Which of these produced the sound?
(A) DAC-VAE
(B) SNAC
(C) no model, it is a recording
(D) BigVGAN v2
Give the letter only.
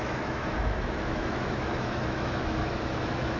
A